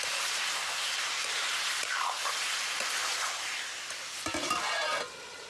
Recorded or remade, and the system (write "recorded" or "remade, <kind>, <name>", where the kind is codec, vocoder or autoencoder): recorded